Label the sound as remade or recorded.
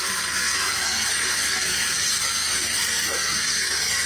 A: remade